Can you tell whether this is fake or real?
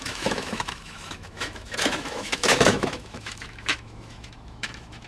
fake